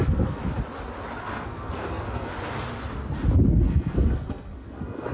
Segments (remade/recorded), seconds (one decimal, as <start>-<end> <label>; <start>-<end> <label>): 0.0-0.4 remade; 0.4-1.2 recorded; 1.2-2.3 remade; 2.3-3.5 recorded; 3.5-5.1 remade